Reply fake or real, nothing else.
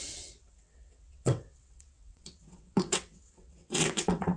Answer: fake